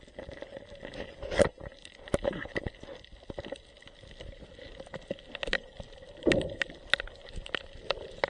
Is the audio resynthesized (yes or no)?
no